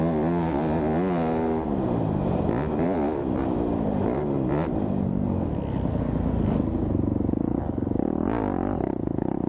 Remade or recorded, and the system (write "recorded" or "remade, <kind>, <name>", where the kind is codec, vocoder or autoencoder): recorded